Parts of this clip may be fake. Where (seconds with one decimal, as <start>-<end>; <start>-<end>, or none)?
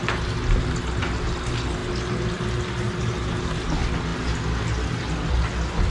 none